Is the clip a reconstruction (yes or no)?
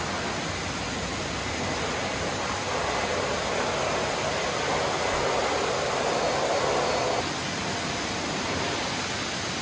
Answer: no